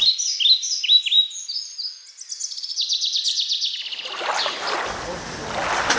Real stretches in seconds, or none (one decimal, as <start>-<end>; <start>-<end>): 0.0-6.0